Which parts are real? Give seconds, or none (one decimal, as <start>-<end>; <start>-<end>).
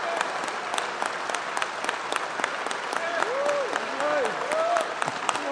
0.0-5.5